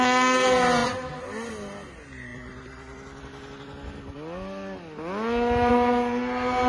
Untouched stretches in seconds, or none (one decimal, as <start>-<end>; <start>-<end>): 0.0-6.7